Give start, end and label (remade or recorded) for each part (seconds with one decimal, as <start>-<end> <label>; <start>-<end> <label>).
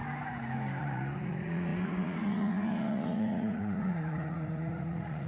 0.0-0.8 recorded; 0.8-5.3 remade